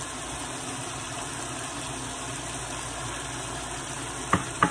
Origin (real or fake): real